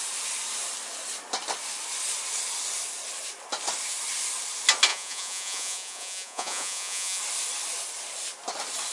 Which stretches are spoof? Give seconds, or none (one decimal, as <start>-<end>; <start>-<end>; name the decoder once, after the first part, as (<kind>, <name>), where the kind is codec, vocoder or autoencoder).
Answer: 4.9-7.2 (vocoder, Vocos)